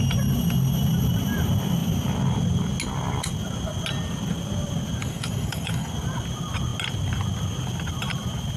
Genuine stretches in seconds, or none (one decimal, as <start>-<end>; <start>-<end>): 0.0-5.0; 5.9-8.6